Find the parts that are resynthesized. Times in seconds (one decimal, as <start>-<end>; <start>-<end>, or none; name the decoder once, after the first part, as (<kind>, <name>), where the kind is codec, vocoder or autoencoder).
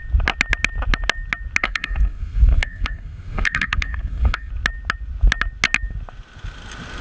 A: 1.6-4.5 (codec, SNAC)